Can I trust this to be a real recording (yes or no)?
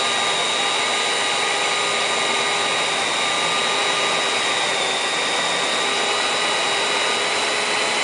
yes